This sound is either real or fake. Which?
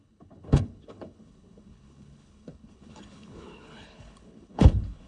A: fake